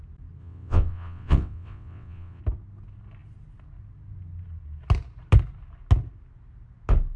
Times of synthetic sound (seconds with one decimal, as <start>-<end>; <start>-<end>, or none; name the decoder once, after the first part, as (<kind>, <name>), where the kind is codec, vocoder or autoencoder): 0.4-2.4 (vocoder, WaveNeXt)